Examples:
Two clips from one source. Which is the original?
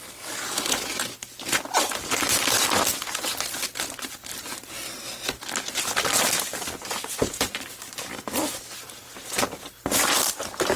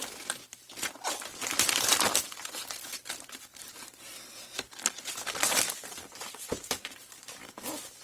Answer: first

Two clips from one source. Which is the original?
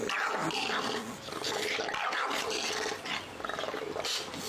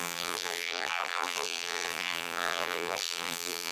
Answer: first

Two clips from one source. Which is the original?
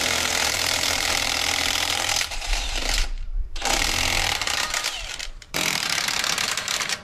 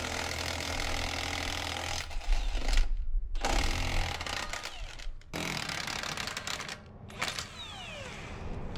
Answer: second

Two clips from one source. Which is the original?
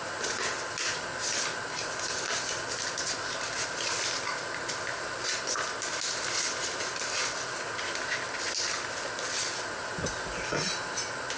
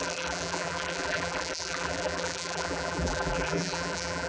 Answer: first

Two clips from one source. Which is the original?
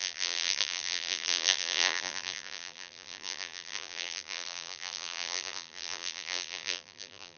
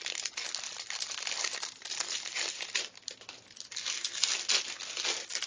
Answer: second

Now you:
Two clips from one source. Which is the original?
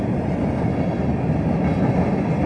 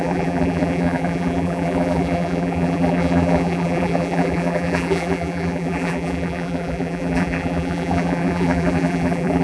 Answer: first